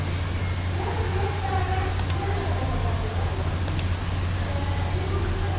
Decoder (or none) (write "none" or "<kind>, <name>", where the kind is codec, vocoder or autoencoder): none